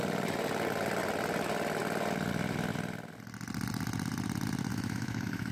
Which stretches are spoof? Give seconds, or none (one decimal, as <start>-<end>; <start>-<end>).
4.7-5.5